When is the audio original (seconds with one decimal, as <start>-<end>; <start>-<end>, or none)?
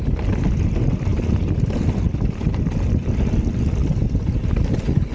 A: 0.0-5.1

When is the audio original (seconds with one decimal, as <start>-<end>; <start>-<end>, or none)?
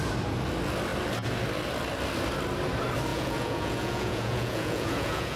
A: 0.0-3.1